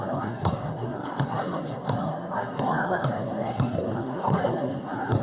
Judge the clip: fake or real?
fake